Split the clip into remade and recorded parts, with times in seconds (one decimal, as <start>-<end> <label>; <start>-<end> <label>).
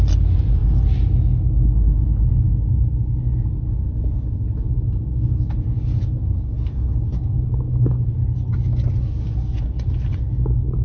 0.0-10.8 recorded